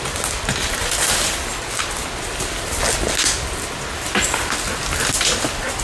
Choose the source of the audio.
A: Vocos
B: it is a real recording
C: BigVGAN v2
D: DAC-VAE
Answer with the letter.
B